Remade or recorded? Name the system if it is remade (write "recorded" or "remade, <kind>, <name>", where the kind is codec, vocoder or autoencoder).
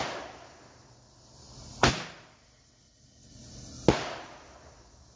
recorded